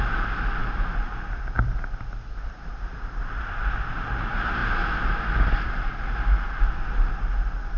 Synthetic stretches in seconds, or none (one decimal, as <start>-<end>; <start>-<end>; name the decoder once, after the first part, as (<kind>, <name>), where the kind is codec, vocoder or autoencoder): 0.6-2.8 (vocoder, BigVGAN v2)